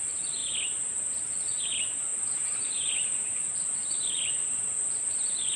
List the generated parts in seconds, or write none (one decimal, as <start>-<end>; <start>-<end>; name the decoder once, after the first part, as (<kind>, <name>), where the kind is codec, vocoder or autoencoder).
none